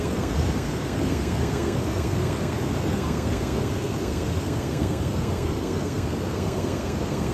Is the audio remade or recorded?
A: remade